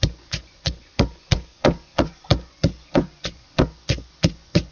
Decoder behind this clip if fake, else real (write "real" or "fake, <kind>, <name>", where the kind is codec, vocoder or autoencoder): fake, vocoder, Vocos